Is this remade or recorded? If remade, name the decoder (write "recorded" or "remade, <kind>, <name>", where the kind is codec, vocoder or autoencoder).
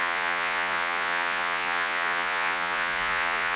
remade, vocoder, Vocos